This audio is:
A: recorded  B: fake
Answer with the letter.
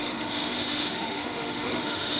B